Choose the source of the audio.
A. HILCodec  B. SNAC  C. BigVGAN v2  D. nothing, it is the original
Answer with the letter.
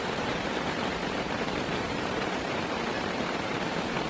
C